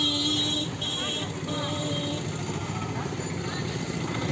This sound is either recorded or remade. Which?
recorded